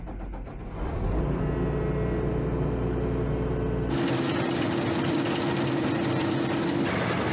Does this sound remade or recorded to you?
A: recorded